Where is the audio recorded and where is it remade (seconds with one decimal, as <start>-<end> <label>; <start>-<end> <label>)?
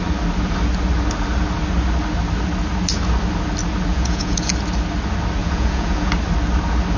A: 0.0-3.9 recorded; 3.9-4.5 remade; 4.5-5.4 recorded; 5.4-6.1 remade; 6.1-7.0 recorded